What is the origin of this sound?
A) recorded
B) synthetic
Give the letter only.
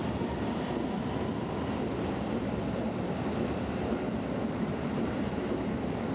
A